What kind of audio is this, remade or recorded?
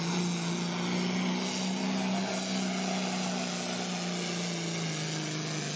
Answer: recorded